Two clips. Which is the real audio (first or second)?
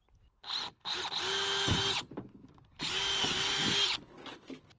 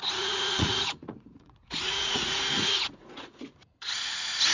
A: first